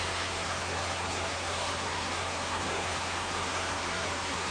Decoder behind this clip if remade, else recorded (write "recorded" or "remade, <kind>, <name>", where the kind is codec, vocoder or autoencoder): remade, codec, SNAC